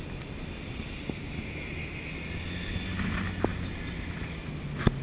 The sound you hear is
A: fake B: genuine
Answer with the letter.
B